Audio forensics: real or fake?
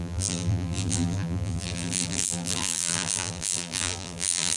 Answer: fake